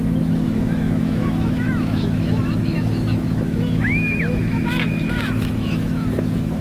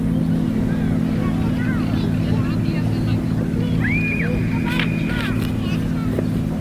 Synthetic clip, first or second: first